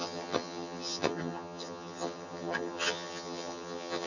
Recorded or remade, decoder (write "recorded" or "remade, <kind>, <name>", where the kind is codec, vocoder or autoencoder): remade, vocoder, HiFi-GAN